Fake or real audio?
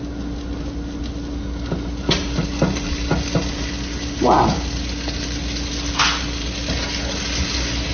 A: real